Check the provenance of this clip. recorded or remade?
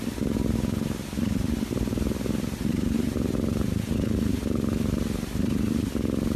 recorded